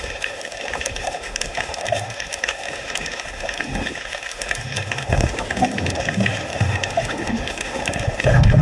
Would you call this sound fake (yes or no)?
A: yes